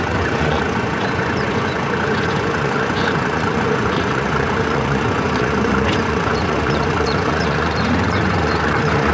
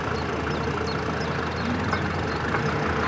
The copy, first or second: first